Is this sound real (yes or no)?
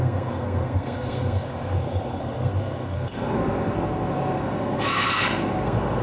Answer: no